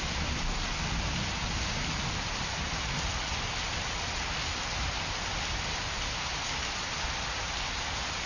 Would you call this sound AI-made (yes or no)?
no